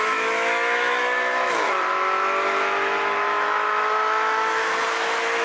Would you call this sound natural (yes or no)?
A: no